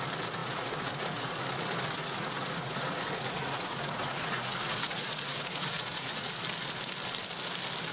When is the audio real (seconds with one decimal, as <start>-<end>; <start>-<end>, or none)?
0.0-0.4; 1.4-2.0; 6.4-7.9